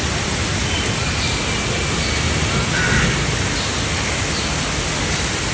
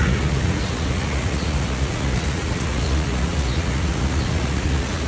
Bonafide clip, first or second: first